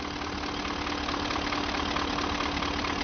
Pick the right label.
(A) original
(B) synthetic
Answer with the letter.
A